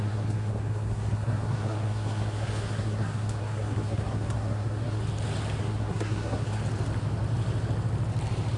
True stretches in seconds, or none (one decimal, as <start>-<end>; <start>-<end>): 5.0-5.6; 6.6-8.6